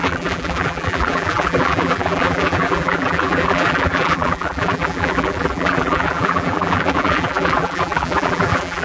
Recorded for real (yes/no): no